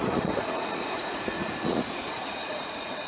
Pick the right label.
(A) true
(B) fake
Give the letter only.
B